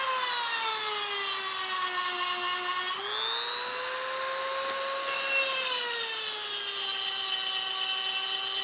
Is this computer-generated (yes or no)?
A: no